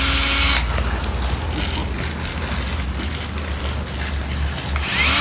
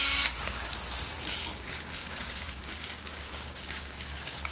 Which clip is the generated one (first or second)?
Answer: second